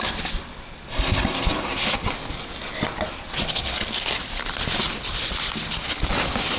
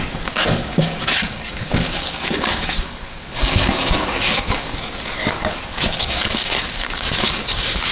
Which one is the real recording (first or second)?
first